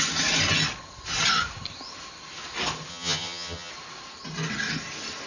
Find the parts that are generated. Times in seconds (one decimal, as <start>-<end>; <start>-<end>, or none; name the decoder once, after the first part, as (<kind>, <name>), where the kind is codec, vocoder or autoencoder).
2.9-3.7 (vocoder, HiFi-GAN)